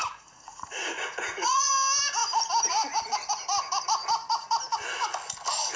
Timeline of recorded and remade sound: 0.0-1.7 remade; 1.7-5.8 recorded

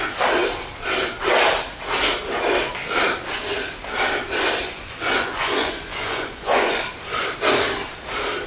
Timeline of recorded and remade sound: 0.0-4.6 recorded; 4.6-6.8 remade; 6.8-8.5 recorded

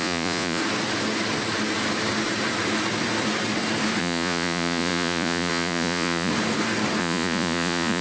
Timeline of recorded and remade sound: 0.0-0.6 remade; 0.6-4.0 recorded; 4.0-6.3 remade; 6.3-7.0 recorded; 7.0-8.0 remade

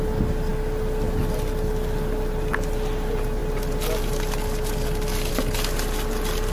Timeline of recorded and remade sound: 0.0-6.5 recorded

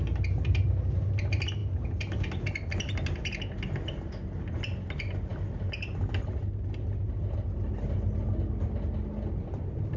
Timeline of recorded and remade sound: 0.0-10.0 recorded

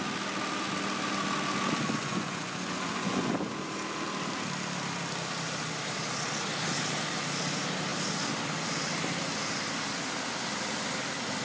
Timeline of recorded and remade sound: 0.0-2.0 recorded; 2.0-3.3 remade; 3.3-11.4 recorded

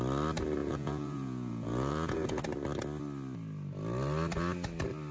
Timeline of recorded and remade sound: 0.0-0.6 recorded; 0.6-2.4 remade; 2.4-5.1 recorded